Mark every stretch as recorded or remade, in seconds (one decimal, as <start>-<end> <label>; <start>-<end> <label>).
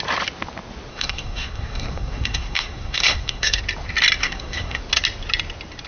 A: 0.0-0.9 recorded; 0.9-3.6 remade; 3.6-4.2 recorded; 4.2-4.8 remade; 4.8-5.9 recorded